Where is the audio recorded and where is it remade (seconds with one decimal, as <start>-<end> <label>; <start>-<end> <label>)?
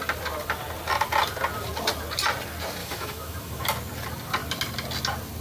0.0-2.8 recorded; 2.8-3.6 remade; 3.6-5.4 recorded